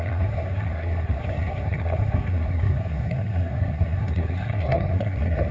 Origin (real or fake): fake